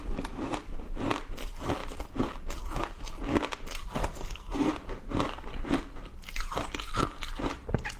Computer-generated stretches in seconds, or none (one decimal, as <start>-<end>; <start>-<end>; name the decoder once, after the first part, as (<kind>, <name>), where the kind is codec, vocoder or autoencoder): 4.0-4.7 (codec, SNAC)